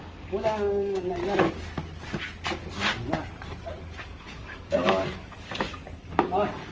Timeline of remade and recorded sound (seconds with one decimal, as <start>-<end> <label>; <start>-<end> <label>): 0.0-1.2 remade; 1.2-4.0 recorded; 4.0-6.7 remade